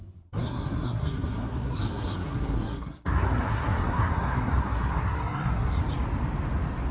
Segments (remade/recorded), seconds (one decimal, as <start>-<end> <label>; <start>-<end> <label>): 0.0-5.8 remade; 5.8-6.9 recorded